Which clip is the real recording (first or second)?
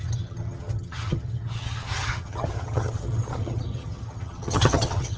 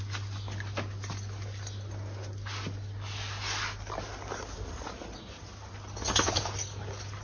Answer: second